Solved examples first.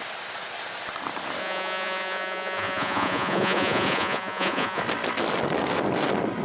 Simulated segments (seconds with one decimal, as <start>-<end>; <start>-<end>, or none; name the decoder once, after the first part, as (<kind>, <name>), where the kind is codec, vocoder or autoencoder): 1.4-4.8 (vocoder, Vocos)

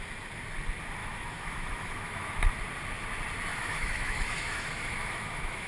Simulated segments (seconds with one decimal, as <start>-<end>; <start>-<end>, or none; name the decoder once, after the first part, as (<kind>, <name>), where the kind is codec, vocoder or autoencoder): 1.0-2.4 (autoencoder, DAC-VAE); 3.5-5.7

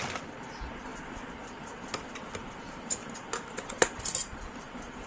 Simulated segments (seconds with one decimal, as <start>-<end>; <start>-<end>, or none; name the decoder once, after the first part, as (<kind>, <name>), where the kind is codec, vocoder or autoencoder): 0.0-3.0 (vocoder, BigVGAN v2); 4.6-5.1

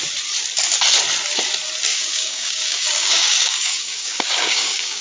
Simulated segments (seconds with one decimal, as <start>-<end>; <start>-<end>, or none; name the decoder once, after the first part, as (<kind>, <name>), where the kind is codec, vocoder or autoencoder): 1.9-5.0 (codec, DAC)

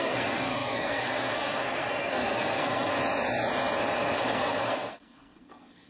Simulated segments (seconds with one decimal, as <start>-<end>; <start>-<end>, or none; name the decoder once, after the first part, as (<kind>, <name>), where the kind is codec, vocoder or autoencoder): 0.0-2.9 (codec, SNAC); 4.3-5.9